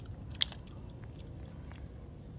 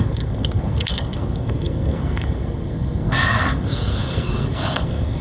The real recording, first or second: first